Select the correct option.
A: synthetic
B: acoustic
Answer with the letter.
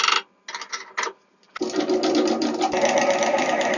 B